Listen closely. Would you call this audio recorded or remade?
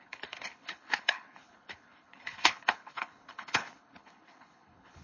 remade